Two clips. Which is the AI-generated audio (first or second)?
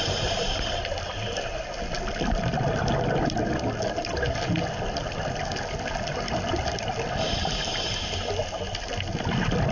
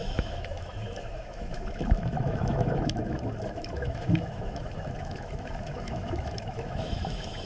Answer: second